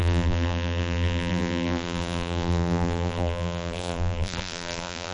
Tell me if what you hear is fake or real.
fake